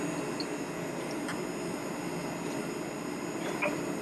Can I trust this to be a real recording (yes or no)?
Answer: yes